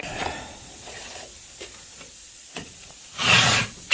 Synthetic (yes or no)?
yes